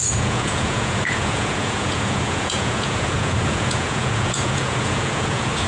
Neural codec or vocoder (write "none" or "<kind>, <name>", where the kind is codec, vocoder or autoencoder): vocoder, Vocos